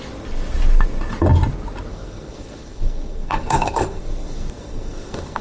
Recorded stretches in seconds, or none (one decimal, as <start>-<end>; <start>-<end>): 0.0-1.9